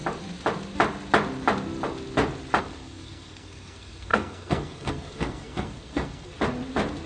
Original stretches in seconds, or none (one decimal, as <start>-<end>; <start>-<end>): 0.0-2.6; 6.3-7.1